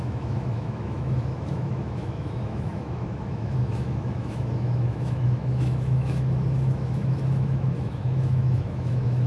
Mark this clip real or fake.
fake